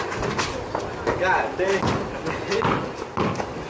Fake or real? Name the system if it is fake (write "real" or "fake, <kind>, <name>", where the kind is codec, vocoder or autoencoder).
real